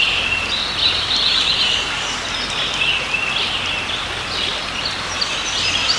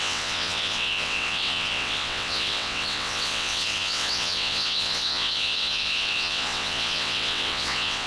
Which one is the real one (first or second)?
first